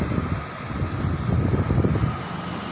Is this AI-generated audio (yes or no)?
no